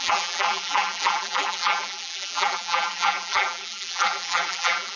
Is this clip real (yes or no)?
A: no